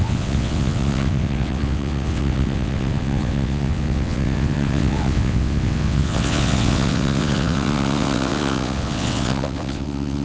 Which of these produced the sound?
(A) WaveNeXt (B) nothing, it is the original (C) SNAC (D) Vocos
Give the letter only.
A